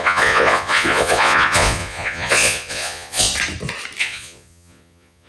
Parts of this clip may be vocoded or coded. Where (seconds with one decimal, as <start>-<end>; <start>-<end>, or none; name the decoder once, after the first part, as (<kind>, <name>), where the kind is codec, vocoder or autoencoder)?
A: 0.0-3.3 (vocoder, Vocos); 4.0-5.3